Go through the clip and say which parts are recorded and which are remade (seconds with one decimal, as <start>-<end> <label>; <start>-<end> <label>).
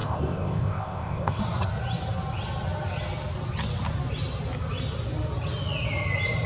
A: 0.0-1.4 remade; 1.4-6.5 recorded